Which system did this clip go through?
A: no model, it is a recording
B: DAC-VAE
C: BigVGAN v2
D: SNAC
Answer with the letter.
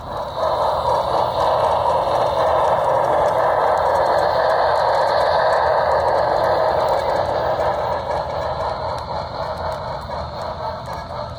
A